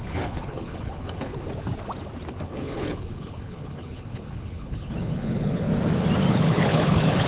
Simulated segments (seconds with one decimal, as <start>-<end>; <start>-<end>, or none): 0.0-1.3; 2.3-5.7; 6.3-7.3